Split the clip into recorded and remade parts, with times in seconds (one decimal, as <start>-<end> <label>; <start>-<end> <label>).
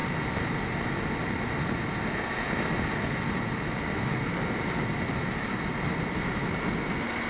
0.0-7.3 recorded